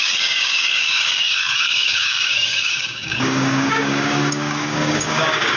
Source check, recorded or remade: remade